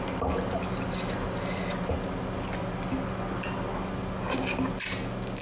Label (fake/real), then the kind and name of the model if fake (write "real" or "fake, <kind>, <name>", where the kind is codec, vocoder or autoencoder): real